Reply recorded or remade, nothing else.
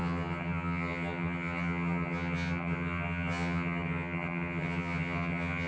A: remade